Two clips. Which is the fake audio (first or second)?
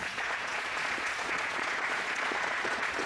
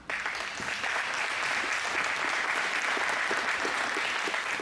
first